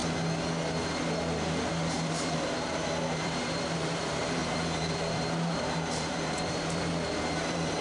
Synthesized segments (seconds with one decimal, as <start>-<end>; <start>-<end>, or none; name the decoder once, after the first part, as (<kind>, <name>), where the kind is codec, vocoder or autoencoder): 1.7-7.8 (vocoder, BigVGAN v2)